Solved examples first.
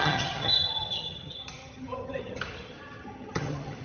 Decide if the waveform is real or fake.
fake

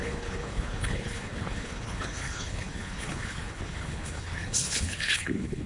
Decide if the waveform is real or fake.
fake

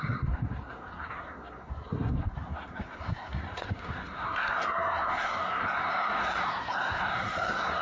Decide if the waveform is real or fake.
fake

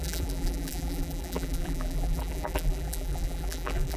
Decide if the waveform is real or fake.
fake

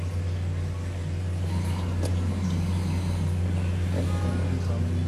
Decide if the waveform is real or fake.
real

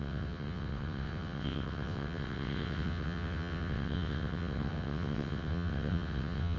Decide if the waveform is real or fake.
fake